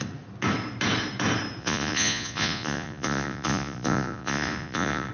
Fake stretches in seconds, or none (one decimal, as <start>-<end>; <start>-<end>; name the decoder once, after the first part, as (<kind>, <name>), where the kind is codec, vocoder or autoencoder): 1.6-5.1 (vocoder, Vocos)